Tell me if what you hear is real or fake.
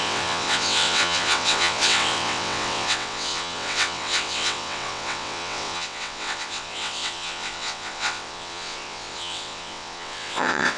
fake